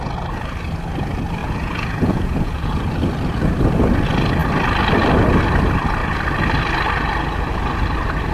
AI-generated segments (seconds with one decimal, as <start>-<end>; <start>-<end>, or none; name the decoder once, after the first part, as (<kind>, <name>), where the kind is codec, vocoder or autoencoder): 1.4-2.7 (vocoder, Vocos)